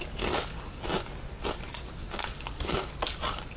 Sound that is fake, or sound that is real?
real